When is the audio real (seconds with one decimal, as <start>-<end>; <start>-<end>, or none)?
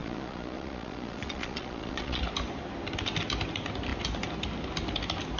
2.2-5.4